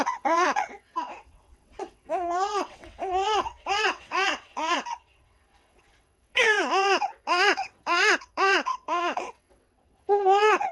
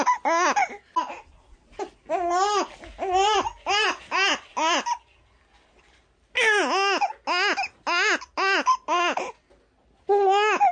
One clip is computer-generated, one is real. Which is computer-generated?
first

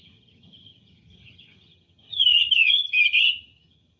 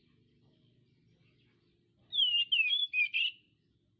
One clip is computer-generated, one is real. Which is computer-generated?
first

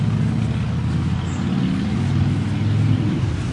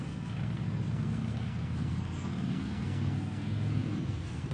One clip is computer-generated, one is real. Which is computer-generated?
second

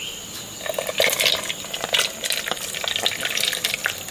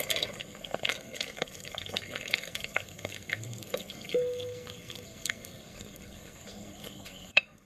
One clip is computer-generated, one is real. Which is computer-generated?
second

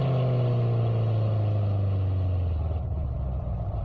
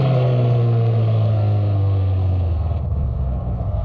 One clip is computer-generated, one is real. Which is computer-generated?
second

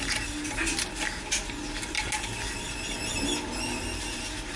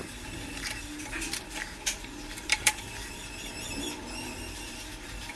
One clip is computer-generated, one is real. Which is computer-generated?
second